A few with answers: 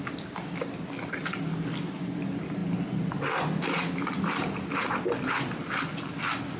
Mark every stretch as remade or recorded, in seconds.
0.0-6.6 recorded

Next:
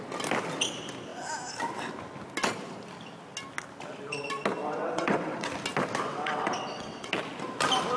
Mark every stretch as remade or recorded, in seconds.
0.0-4.6 recorded; 4.6-5.5 remade; 5.5-6.1 recorded; 6.1-7.1 remade; 7.1-8.0 recorded

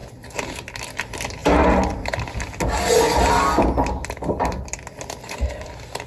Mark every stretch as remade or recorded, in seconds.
0.0-6.1 recorded

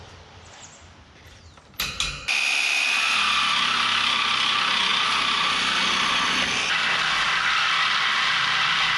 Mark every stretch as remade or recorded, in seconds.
0.0-9.0 recorded

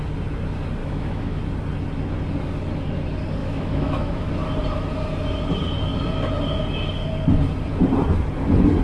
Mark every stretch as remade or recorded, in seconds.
0.0-0.8 recorded; 0.8-1.4 remade; 1.4-3.4 recorded; 3.4-4.3 remade; 4.3-8.8 recorded

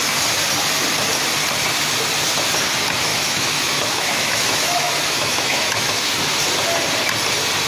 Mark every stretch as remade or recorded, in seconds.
0.0-3.1 recorded; 3.1-6.1 remade; 6.1-7.7 recorded

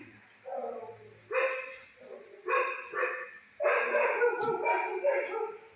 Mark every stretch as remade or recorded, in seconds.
0.0-5.8 recorded

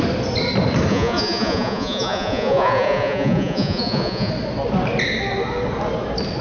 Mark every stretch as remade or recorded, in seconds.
0.0-0.9 recorded; 0.9-4.3 remade; 4.3-6.4 recorded